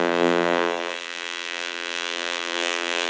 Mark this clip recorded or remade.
remade